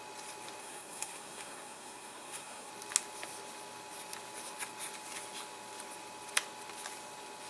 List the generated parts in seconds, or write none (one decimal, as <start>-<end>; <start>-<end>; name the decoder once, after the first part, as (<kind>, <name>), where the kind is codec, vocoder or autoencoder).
0.6-2.7 (codec, SNAC)